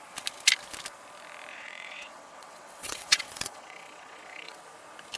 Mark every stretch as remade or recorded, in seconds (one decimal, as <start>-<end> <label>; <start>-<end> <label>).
0.0-1.5 recorded; 1.5-4.6 remade; 4.6-5.2 recorded